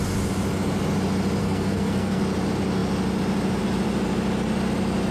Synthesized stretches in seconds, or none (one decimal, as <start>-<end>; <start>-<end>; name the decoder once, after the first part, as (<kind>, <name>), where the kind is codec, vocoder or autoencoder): 1.4-2.2 (codec, SNAC)